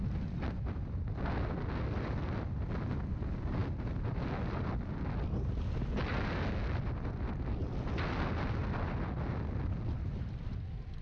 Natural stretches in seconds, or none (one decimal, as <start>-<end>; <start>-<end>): 0.0-11.0